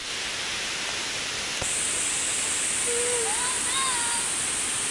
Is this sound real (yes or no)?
yes